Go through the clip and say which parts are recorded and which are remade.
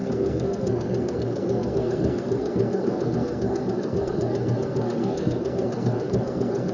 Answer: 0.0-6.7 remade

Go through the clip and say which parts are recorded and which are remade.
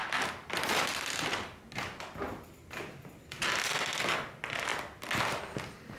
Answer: 0.0-6.0 recorded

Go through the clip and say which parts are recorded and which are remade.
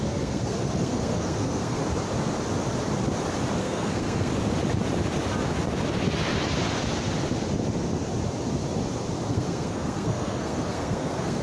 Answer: 0.0-1.8 remade; 1.8-3.6 recorded; 3.6-4.3 remade; 4.3-9.3 recorded; 9.3-11.4 remade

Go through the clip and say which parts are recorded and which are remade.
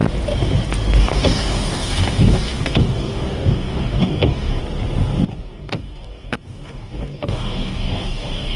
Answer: 0.0-1.0 recorded; 1.0-4.6 remade; 4.6-5.3 recorded; 5.3-8.6 remade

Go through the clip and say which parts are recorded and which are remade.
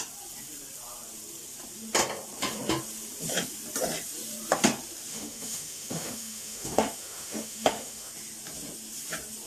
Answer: 0.0-5.1 recorded; 5.1-8.1 remade; 8.1-9.5 recorded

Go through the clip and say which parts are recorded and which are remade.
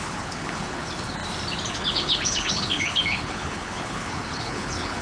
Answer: 0.0-1.2 remade; 1.2-1.7 recorded; 1.7-5.0 remade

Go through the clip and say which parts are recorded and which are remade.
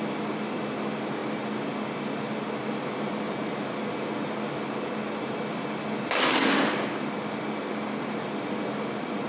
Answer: 0.0-9.3 recorded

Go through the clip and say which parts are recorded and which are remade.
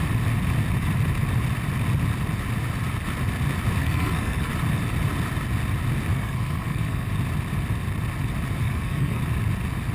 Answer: 0.0-3.8 recorded; 3.8-4.5 remade; 4.5-6.1 recorded; 6.1-7.1 remade; 7.1-8.6 recorded; 8.6-9.2 remade; 9.2-9.9 recorded